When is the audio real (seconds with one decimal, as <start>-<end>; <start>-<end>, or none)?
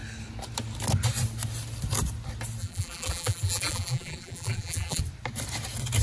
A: 0.0-2.6; 5.0-6.0